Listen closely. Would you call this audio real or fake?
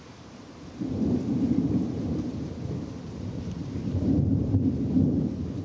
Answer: fake